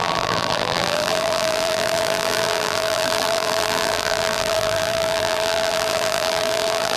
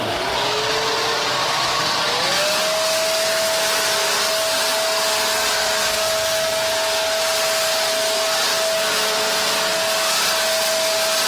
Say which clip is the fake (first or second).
first